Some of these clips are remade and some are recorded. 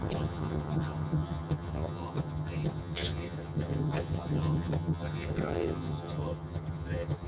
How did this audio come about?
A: remade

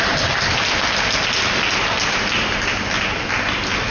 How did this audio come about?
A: recorded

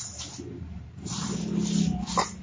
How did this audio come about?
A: recorded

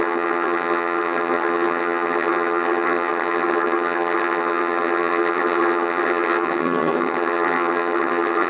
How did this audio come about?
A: remade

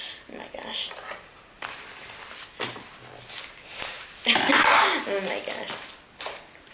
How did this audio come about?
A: recorded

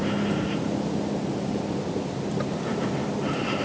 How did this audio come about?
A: recorded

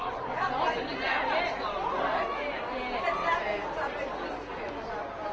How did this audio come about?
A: recorded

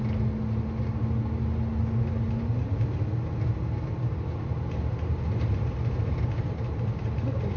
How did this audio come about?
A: recorded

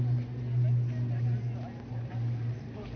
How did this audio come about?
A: recorded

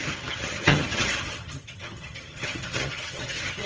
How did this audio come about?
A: remade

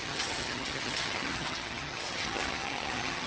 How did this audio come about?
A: remade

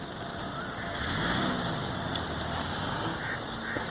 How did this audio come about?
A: recorded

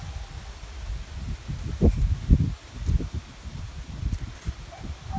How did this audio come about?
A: recorded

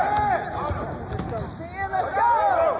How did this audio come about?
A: recorded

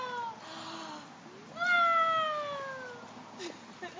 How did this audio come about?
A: recorded